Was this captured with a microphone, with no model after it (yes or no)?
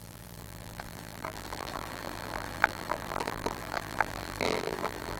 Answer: no